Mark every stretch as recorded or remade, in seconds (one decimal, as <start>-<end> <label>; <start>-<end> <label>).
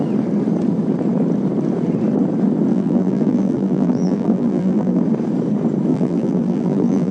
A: 0.0-2.7 recorded; 2.7-5.0 remade; 5.0-5.9 recorded; 5.9-7.1 remade